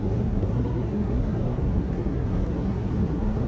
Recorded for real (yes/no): no